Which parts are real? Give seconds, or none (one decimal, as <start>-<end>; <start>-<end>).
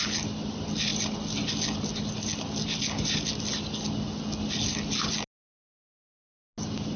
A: 0.0-7.0